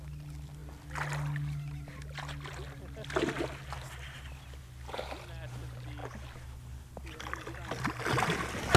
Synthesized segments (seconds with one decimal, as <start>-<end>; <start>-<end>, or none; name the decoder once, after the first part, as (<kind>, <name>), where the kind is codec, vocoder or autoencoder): none